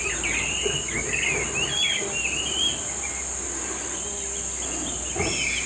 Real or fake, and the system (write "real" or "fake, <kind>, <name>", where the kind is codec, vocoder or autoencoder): real